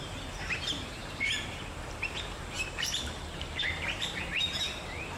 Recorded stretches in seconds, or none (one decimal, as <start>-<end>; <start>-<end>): none